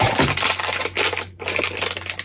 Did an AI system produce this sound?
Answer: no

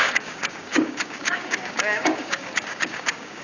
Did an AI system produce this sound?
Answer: yes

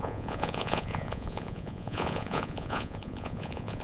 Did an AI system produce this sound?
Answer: yes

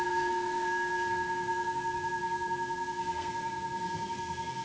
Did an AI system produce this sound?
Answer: yes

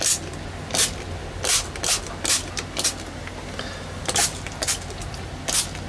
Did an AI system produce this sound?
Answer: no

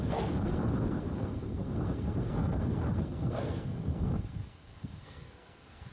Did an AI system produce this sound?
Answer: yes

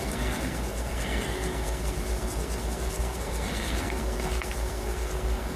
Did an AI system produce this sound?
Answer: yes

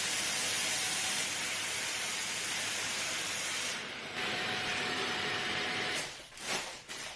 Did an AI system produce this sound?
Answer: yes